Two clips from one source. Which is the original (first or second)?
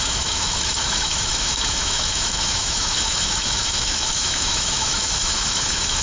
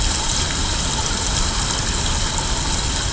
second